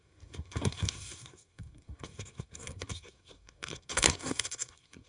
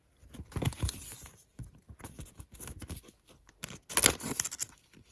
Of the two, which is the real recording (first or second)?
second